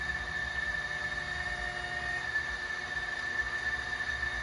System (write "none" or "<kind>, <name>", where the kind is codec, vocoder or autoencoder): none